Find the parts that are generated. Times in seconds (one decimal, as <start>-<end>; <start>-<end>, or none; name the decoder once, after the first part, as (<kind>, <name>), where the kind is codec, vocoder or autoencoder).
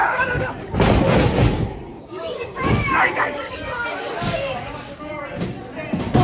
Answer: 0.0-0.5 (codec, DAC); 1.9-5.1